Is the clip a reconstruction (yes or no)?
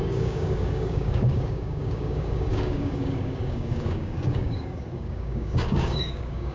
yes